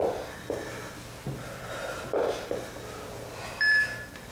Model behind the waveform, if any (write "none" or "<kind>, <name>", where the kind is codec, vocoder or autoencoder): none